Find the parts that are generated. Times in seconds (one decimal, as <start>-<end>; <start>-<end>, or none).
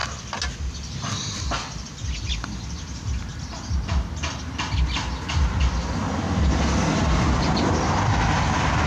none